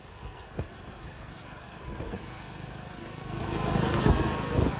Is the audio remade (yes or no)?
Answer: yes